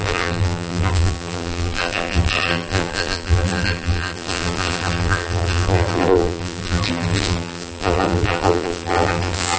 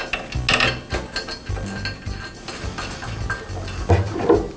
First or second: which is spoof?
first